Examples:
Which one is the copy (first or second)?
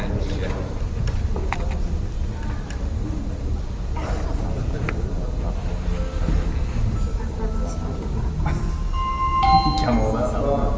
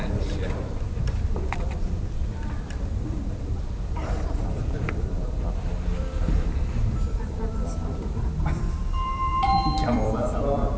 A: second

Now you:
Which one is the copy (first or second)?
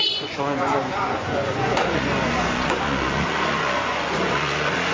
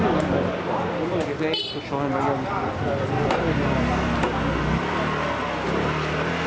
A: first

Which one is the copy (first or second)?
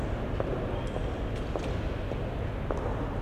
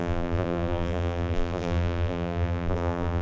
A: second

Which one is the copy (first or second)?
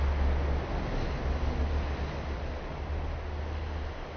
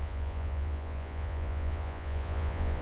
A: second